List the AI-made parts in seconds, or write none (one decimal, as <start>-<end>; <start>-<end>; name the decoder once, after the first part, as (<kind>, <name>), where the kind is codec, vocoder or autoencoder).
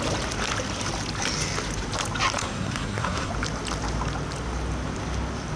2.4-3.3 (codec, SNAC)